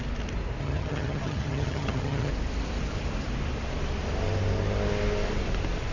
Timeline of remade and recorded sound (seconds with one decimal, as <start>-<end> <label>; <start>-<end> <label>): 0.0-0.6 recorded; 0.6-2.3 remade; 2.3-5.9 recorded